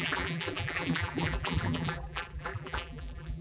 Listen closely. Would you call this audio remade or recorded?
remade